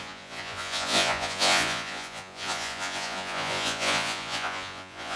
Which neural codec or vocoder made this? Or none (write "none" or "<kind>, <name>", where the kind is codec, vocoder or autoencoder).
vocoder, Vocos